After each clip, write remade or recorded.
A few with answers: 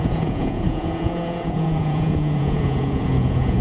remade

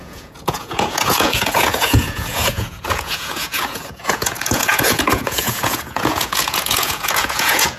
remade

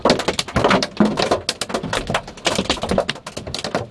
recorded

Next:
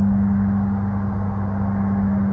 recorded